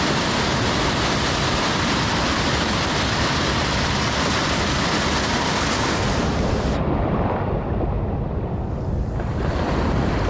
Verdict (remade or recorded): recorded